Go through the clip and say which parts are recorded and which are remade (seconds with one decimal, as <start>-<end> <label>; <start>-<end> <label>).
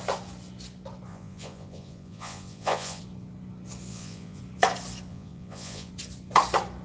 0.0-1.1 recorded; 1.1-3.0 remade; 3.0-3.9 recorded; 3.9-4.4 remade; 4.4-5.1 recorded; 5.1-5.9 remade; 5.9-6.8 recorded